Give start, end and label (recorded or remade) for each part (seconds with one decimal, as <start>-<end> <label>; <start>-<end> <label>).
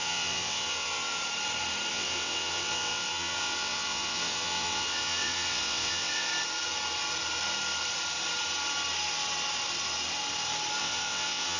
0.0-1.2 remade; 1.2-1.9 recorded; 1.9-6.3 remade; 6.3-10.8 recorded; 10.8-11.6 remade